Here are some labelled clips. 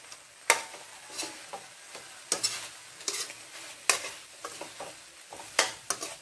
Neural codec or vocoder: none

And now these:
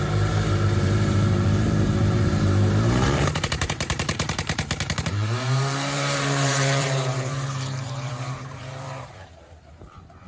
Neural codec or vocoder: vocoder, BigVGAN v2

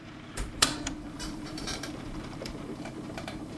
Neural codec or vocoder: vocoder, BigVGAN v2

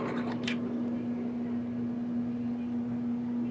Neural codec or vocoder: none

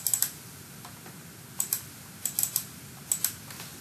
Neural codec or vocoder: none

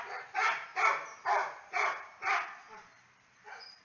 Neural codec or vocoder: vocoder, BigVGAN v2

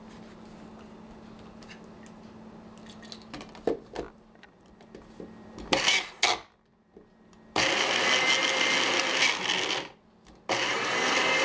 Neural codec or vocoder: none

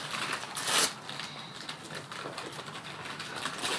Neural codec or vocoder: none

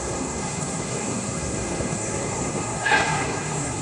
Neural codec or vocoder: codec, SNAC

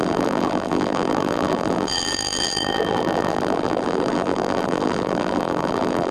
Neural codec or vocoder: vocoder, BigVGAN v2